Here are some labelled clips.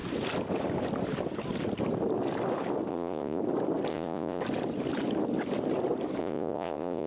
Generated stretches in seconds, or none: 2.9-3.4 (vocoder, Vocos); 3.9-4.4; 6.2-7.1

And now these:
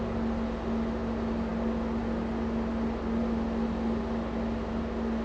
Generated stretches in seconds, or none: none

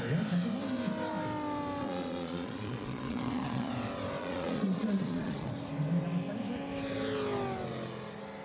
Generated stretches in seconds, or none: 1.8-3.7 (vocoder, Vocos); 4.2-5.5

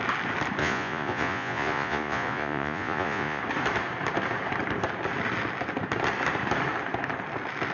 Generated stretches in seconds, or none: 0.6-3.4 (vocoder, Vocos)

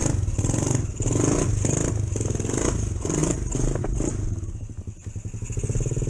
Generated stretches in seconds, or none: none

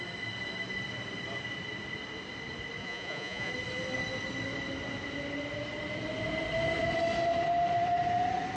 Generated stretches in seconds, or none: 2.8-3.5 (vocoder, Vocos)

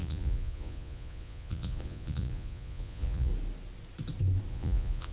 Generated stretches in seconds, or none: 0.0-3.3 (vocoder, Vocos); 4.5-5.1